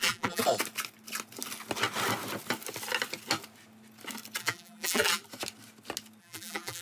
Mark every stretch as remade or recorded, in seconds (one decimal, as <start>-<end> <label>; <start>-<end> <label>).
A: 0.0-0.4 remade; 0.4-4.4 recorded; 4.4-5.2 remade; 5.2-6.2 recorded; 6.2-6.8 remade